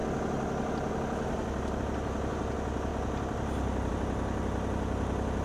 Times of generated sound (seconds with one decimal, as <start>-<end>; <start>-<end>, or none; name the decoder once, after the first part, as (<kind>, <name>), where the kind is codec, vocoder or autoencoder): none

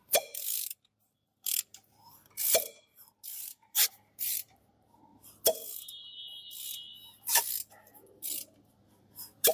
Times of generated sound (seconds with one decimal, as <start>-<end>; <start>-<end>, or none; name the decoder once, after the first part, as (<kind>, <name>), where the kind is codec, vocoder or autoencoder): 0.0-1.5 (vocoder, BigVGAN v2); 2.4-5.1; 8.7-9.5

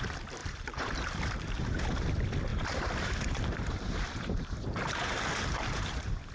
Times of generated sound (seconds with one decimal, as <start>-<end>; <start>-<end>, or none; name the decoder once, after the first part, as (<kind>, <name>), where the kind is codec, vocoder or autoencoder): 0.4-1.8 (vocoder, BigVGAN v2); 2.5-6.3

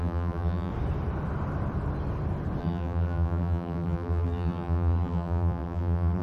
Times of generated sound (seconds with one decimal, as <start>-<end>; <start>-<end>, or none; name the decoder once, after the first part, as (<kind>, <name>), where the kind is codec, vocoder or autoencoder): 0.0-0.7 (vocoder, BigVGAN v2); 2.6-6.2

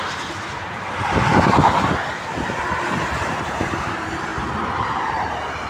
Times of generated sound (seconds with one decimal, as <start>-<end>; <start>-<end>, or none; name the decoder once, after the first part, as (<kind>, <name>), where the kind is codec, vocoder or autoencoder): 0.0-1.3 (vocoder, BigVGAN v2); 2.6-5.7

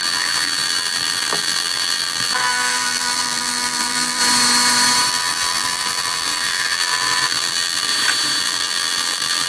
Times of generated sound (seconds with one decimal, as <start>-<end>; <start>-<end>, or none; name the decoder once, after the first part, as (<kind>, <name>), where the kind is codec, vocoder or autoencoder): 0.0-4.2 (vocoder, BigVGAN v2); 5.1-7.9; 8.4-9.5